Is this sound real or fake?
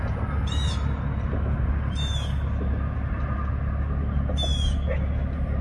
real